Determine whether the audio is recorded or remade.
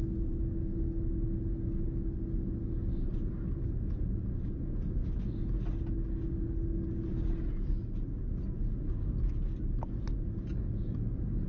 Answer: recorded